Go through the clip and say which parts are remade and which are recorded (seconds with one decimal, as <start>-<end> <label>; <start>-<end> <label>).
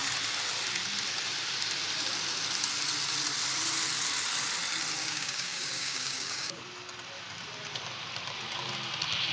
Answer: 0.0-5.0 recorded; 5.0-6.6 remade; 6.6-9.3 recorded